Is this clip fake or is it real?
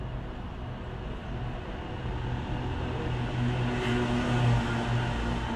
real